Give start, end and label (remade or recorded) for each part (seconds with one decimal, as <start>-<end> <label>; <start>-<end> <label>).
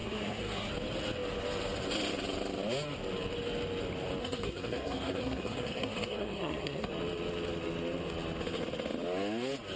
0.0-0.7 remade; 0.7-4.2 recorded; 4.2-6.9 remade; 6.9-9.8 recorded